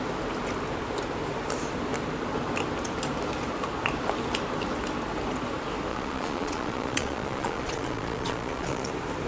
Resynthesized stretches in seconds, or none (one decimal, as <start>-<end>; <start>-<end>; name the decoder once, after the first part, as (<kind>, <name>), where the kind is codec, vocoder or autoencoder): 5.9-8.9 (vocoder, Vocos)